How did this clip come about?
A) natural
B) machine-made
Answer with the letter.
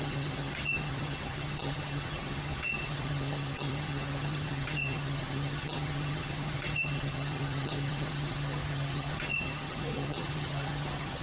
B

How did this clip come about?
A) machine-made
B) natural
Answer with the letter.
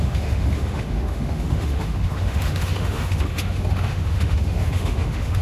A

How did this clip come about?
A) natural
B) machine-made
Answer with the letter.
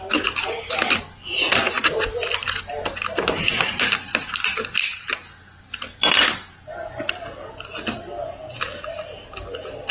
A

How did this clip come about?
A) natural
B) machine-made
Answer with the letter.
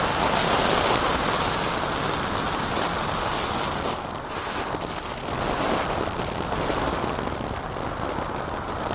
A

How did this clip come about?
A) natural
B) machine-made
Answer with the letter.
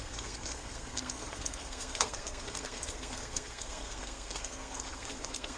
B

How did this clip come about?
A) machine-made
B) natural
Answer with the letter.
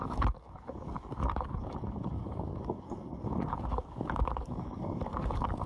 A